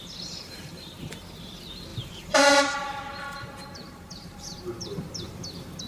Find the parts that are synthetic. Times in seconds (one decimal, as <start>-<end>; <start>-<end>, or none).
0.0-0.9; 1.9-5.4